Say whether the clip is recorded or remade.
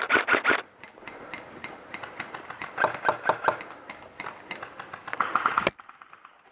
recorded